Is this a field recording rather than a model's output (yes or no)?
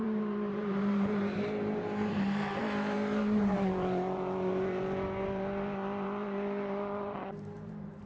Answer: no